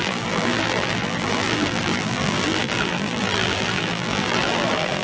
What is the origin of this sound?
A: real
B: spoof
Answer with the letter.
B